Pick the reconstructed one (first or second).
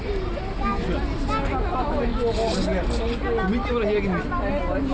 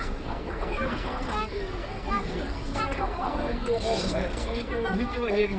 second